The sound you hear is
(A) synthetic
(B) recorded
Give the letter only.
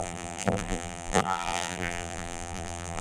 A